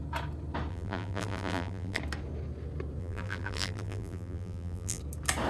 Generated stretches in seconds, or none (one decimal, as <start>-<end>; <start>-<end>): 0.7-2.0; 3.0-5.0